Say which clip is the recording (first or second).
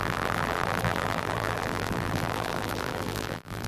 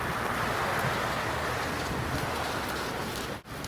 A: second